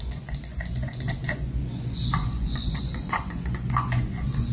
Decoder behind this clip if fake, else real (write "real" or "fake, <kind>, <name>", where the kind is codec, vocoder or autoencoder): fake, vocoder, Vocos